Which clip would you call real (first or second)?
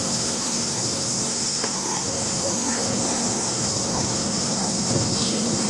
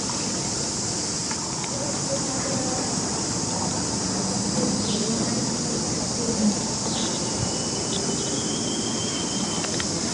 second